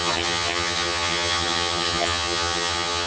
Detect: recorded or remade remade